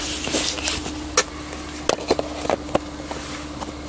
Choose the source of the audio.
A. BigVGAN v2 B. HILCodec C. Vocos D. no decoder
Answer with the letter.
D